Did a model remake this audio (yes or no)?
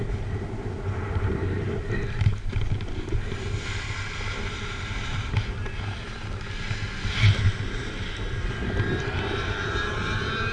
no